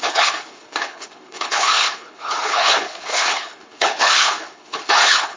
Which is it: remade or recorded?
remade